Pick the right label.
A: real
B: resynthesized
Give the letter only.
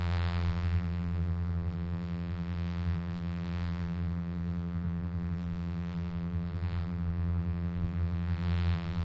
B